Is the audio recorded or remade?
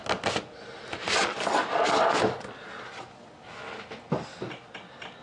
recorded